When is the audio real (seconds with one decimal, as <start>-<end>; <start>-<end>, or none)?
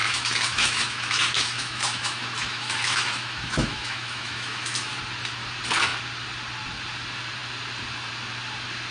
5.0-8.9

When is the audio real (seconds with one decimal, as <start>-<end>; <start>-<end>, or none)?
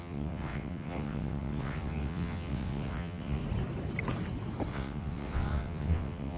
3.4-4.7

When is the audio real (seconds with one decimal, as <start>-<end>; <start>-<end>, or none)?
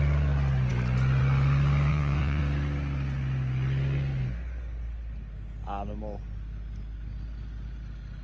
0.0-1.9; 2.4-8.2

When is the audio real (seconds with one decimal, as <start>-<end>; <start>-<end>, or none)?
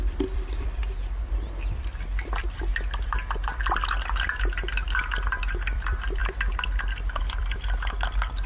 0.8-1.8; 2.7-5.4; 6.2-7.2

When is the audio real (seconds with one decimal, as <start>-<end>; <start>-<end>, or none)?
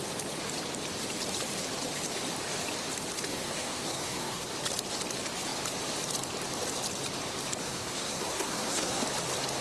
0.0-3.3; 4.5-7.6; 9.0-9.6